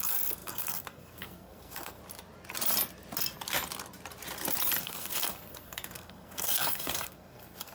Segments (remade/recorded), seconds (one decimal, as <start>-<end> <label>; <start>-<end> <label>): 0.0-2.0 remade; 2.0-4.8 recorded; 4.8-7.7 remade

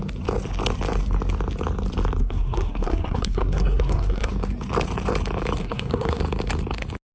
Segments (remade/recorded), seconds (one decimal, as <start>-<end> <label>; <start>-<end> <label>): 0.0-2.2 recorded; 2.2-4.3 remade; 4.3-5.6 recorded; 5.6-6.2 remade; 6.2-7.1 recorded

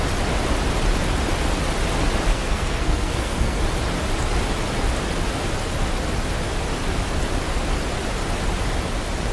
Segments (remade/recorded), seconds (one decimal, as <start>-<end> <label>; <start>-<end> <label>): 0.0-2.3 recorded; 2.3-3.6 remade; 3.6-9.3 recorded

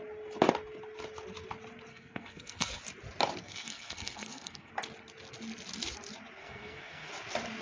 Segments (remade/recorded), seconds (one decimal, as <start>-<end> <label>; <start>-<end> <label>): 0.0-1.9 recorded; 1.9-2.8 remade; 2.8-3.4 recorded; 3.4-4.7 remade; 4.7-6.4 recorded; 6.4-7.1 remade; 7.1-7.6 recorded

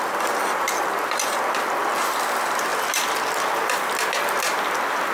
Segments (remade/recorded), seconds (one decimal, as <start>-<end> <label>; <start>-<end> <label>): 0.0-5.1 recorded

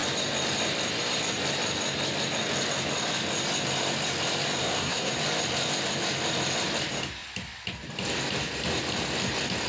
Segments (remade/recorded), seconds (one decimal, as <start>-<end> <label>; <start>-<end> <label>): 0.0-4.6 recorded; 4.6-5.1 remade; 5.1-9.7 recorded

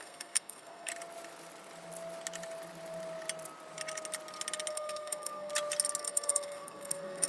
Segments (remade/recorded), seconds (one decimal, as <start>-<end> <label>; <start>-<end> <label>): 0.0-0.9 remade; 0.9-4.7 recorded; 4.7-5.5 remade; 5.5-6.0 recorded; 6.0-7.3 remade